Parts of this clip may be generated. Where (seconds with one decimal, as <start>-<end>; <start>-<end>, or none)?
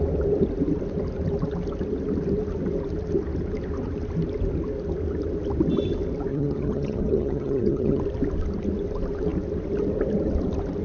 6.3-8.0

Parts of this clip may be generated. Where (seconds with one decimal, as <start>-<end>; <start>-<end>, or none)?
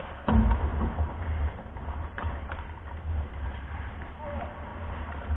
0.7-3.9; 4.7-5.4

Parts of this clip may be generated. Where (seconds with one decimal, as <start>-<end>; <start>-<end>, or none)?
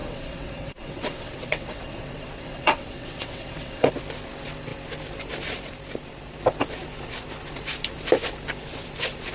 0.0-3.9